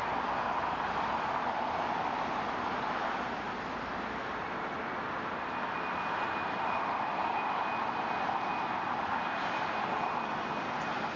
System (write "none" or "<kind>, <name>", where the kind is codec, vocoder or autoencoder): none